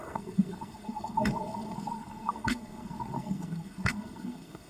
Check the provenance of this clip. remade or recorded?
remade